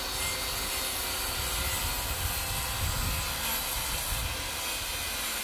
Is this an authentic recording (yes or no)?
yes